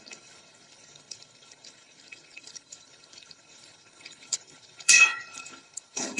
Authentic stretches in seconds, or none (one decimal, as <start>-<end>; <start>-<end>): none